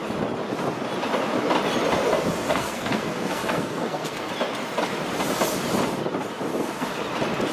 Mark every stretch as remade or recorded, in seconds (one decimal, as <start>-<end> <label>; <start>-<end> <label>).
0.0-2.5 recorded; 2.5-4.3 remade; 4.3-6.5 recorded; 6.5-7.0 remade; 7.0-7.5 recorded